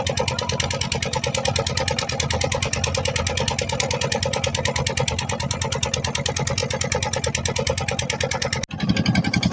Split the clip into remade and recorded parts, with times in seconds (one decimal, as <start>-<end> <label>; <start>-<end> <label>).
0.0-9.5 recorded

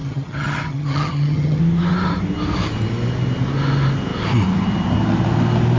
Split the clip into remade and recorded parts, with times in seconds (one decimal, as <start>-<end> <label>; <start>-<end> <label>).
0.0-1.6 remade; 1.6-5.8 recorded

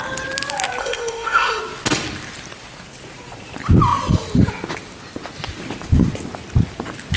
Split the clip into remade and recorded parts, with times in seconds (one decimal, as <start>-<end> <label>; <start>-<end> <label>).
0.0-0.8 recorded; 0.8-1.6 remade; 1.6-7.2 recorded

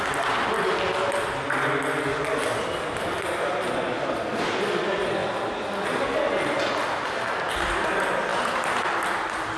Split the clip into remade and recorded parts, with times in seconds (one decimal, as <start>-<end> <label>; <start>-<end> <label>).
0.0-9.6 recorded

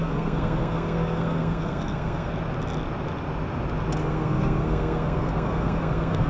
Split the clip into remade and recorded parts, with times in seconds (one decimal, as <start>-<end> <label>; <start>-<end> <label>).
0.0-2.3 remade; 2.3-4.0 recorded; 4.0-6.3 remade

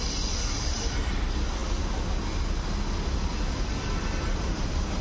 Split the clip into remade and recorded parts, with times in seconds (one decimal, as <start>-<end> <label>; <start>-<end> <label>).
0.0-1.6 remade; 1.6-3.7 recorded; 3.7-5.0 remade

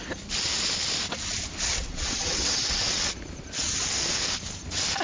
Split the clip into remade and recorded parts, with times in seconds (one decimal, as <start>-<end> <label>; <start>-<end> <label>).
0.0-1.7 recorded; 1.7-3.1 remade; 3.1-5.0 recorded

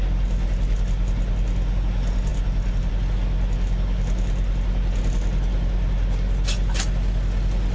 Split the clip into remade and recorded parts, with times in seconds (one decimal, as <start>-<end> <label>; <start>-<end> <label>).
0.0-7.7 recorded